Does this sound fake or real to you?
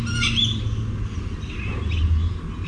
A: real